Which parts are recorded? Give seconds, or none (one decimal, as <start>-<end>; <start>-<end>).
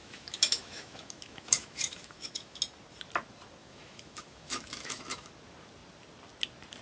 2.6-3.6; 5.3-6.8